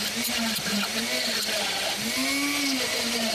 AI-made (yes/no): no